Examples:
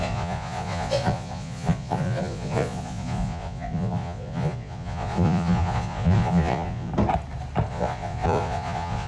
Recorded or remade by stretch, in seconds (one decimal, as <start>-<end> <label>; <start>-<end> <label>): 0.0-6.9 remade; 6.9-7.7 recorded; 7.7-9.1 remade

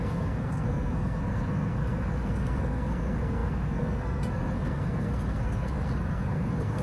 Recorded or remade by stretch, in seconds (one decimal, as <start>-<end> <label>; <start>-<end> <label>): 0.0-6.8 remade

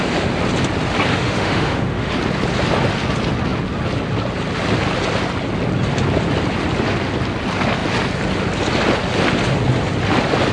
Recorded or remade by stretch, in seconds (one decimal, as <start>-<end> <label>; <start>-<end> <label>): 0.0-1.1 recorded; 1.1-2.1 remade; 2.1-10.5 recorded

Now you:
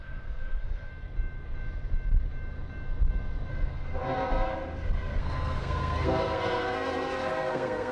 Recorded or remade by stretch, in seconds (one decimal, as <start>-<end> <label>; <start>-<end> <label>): 0.0-0.9 remade; 0.9-3.5 recorded; 3.5-7.9 remade